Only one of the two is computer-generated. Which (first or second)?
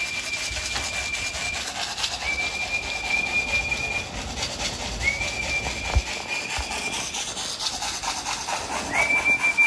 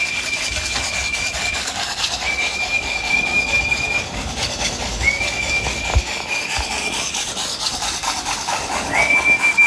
second